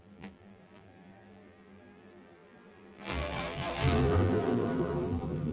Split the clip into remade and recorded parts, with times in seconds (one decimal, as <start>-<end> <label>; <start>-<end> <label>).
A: 0.0-5.5 remade